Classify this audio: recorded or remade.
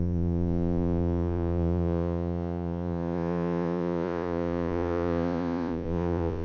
remade